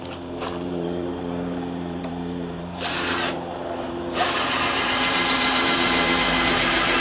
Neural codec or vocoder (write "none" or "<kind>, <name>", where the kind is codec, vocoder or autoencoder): vocoder, BigVGAN v2